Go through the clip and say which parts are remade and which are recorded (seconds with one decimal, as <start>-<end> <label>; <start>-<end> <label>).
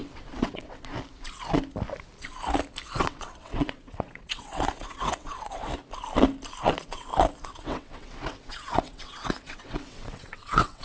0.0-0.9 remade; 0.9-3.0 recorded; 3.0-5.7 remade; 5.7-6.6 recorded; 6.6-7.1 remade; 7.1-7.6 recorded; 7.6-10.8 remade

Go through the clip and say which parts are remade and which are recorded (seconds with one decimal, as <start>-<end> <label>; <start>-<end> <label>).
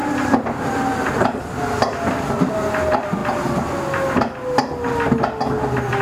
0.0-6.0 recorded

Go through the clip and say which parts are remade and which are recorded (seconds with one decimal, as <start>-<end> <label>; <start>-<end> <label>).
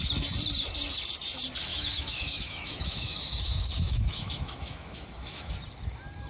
0.0-1.7 recorded; 1.7-5.5 remade; 5.5-6.3 recorded